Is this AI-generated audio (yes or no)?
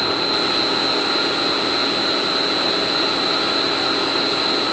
no